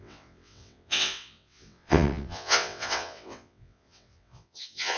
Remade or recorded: remade